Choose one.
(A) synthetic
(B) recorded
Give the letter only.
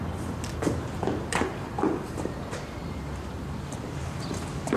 A